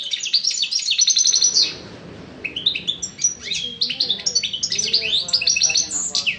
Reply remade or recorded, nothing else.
recorded